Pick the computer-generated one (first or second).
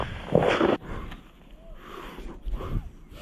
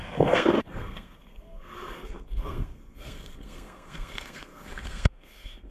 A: second